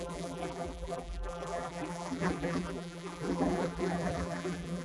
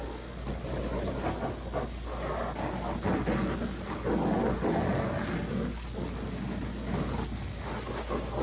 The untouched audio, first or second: second